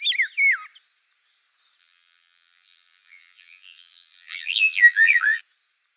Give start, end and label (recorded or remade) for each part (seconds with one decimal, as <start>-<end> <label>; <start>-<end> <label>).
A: 0.0-1.8 recorded; 1.8-5.4 remade; 5.4-6.0 recorded